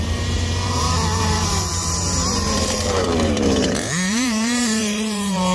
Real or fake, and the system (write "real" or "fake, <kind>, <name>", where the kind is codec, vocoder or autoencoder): fake, vocoder, BigVGAN v2